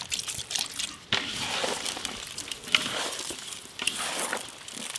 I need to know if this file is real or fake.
real